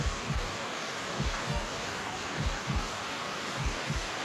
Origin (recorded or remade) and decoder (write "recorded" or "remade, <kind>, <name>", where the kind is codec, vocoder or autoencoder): remade, codec, DAC